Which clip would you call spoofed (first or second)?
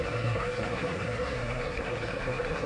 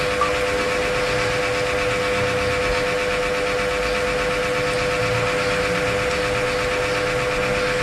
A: first